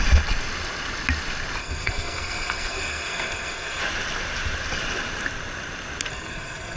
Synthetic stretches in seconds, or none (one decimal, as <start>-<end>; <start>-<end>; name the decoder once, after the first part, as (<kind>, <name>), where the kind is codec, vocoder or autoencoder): 1.6-3.8 (codec, SNAC); 6.1-6.8